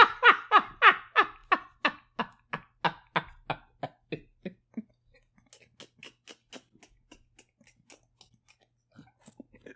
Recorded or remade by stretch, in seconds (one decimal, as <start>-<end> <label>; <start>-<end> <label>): 0.0-9.8 recorded